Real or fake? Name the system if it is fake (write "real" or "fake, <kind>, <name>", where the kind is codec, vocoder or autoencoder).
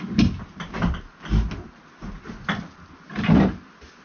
real